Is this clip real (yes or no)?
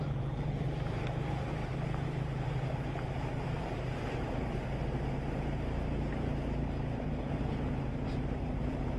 no